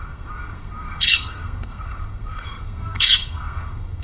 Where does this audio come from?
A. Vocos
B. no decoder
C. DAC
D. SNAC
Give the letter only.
D